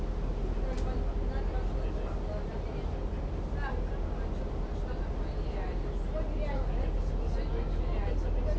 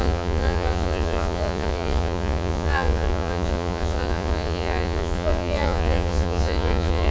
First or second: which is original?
first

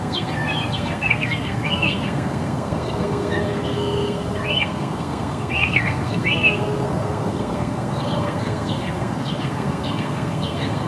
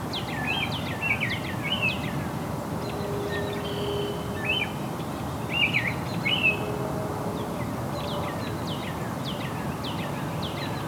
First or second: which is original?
second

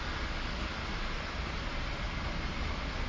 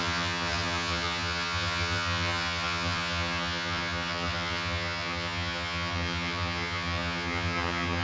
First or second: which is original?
first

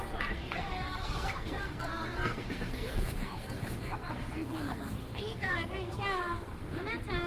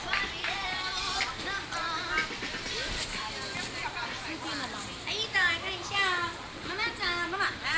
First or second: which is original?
second